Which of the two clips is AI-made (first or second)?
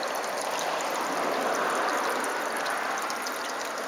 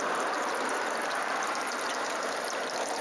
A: second